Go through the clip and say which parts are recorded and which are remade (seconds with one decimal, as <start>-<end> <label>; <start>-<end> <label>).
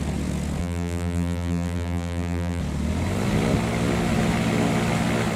0.0-0.6 recorded; 0.6-2.6 remade; 2.6-5.4 recorded